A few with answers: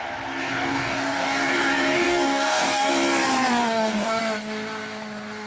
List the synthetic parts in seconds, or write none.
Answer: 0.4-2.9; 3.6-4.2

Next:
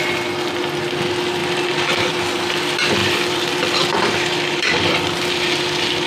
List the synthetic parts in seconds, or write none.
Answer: 1.4-2.1; 3.0-5.3

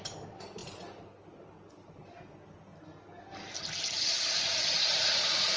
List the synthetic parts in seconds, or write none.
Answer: none

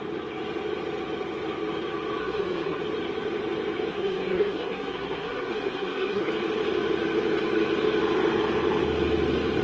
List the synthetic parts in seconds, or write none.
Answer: 2.2-2.8; 3.9-6.3